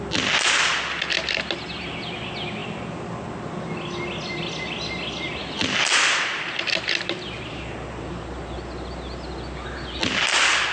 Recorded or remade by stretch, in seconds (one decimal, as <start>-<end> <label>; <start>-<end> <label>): 0.0-10.7 recorded